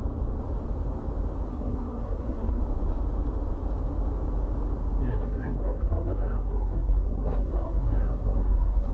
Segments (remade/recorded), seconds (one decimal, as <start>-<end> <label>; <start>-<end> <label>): 0.0-1.5 recorded; 1.5-2.6 remade; 2.6-5.1 recorded; 5.1-8.9 remade